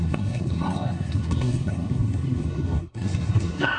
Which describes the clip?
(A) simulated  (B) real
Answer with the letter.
A